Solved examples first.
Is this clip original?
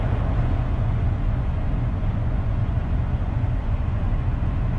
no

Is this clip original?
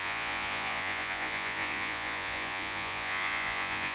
no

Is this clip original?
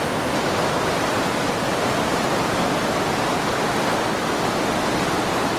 yes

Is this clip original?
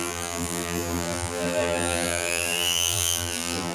no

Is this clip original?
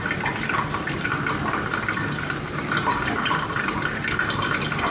yes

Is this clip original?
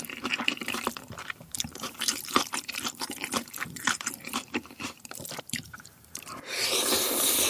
no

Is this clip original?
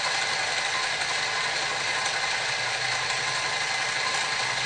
yes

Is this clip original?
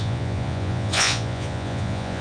no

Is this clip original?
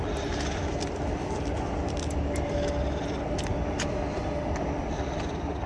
yes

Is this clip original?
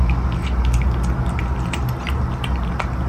yes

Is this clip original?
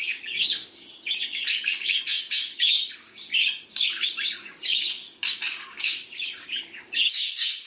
no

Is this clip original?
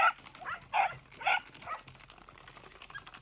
yes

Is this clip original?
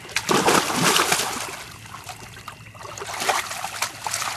yes